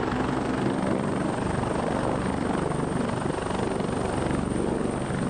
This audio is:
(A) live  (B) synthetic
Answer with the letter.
A